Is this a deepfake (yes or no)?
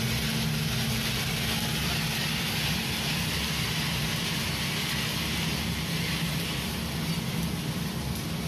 no